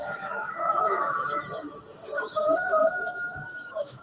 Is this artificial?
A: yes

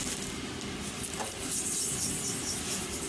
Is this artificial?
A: yes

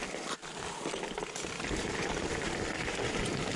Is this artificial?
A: no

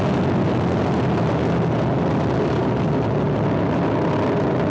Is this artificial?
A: no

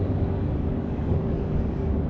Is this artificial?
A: yes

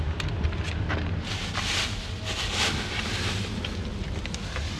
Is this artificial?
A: no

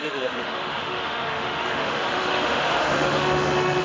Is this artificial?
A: yes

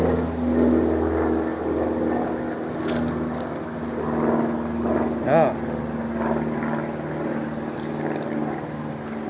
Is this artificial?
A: no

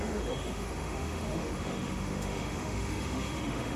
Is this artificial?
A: yes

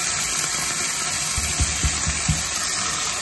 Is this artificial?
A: no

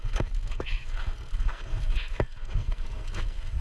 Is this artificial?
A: yes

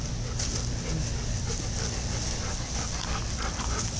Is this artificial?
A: no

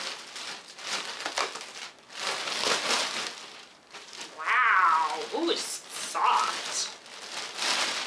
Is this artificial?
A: no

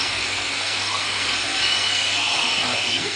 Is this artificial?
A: yes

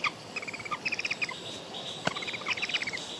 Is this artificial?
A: no